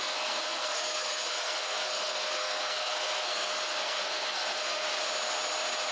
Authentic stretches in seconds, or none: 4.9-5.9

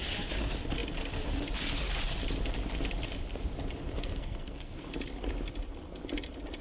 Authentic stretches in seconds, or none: 0.0-3.9; 4.9-6.6

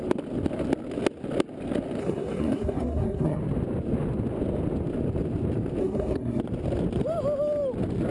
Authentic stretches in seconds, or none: 0.0-2.0; 3.4-5.8; 6.4-8.1

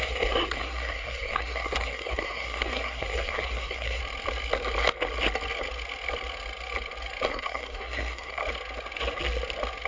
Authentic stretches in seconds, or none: 4.0-7.3; 8.4-9.9